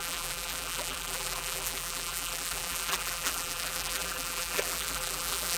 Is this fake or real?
fake